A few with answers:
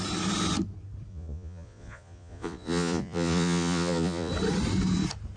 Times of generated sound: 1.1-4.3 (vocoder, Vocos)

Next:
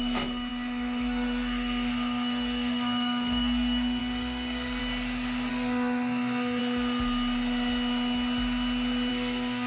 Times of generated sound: 0.0-4.8 (codec, SNAC); 5.5-6.6; 9.1-9.7

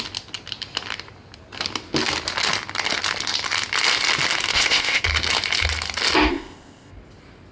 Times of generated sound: 4.5-5.0 (codec, ZipCodec); 6.3-6.9